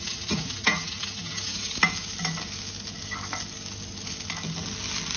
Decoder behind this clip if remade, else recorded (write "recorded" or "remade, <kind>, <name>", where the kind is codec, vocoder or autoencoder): recorded